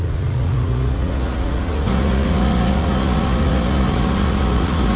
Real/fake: fake